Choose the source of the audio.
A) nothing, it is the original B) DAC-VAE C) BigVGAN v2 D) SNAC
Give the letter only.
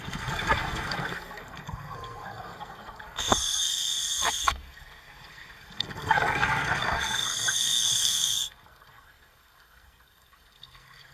D